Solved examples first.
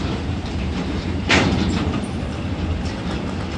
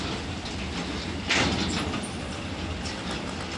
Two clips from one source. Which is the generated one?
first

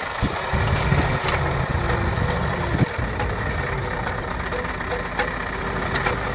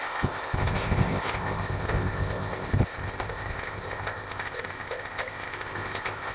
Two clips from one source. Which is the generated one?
second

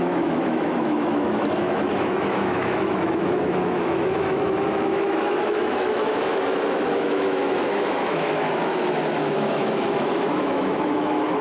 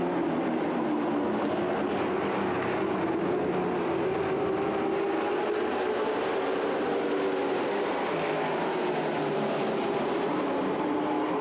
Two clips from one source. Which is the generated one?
first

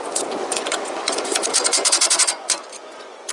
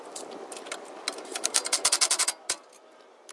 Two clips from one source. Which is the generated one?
first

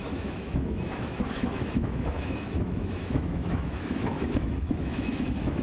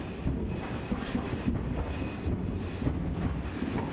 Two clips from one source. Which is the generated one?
first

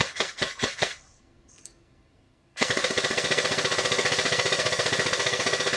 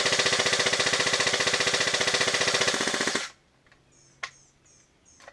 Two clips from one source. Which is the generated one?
first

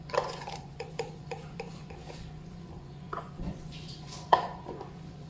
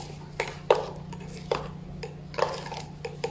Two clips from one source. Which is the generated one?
first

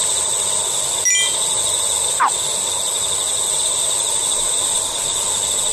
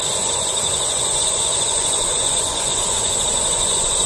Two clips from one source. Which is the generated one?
second